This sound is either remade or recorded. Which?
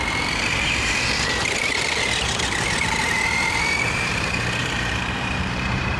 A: remade